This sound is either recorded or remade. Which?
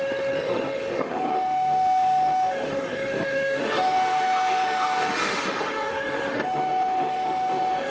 remade